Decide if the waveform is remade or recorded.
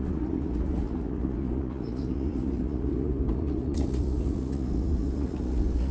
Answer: remade